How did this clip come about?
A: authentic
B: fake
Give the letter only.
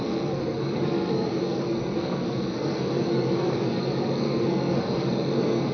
B